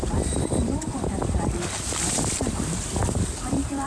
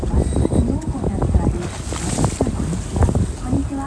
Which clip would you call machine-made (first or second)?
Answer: first